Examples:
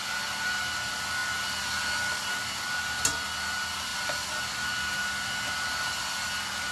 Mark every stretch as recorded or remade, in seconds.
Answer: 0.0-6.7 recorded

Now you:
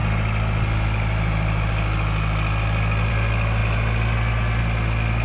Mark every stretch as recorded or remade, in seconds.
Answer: 0.0-5.2 recorded

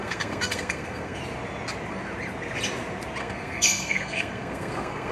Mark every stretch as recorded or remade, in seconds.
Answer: 0.0-1.2 remade; 1.2-3.2 recorded; 3.2-5.1 remade